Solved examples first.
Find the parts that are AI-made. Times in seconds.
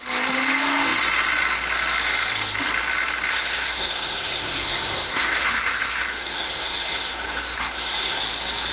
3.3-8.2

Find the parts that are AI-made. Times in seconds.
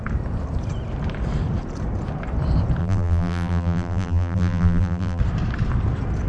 2.8-5.2